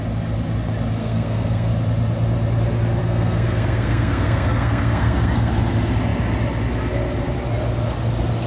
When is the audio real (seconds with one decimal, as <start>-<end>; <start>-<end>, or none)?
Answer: 0.0-1.0; 1.7-3.0; 5.5-8.5